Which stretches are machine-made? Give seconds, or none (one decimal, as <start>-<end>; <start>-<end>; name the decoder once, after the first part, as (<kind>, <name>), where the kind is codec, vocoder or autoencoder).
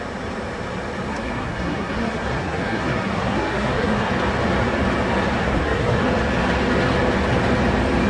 1.1-4.1 (codec, SNAC); 5.4-6.0